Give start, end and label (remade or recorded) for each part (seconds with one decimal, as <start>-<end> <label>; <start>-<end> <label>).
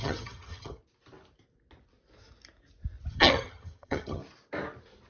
0.0-0.8 remade; 0.8-3.1 recorded; 3.1-4.2 remade; 4.2-5.1 recorded